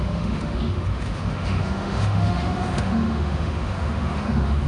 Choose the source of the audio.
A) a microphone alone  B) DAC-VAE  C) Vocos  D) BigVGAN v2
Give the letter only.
B